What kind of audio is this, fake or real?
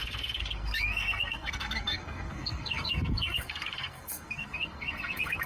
fake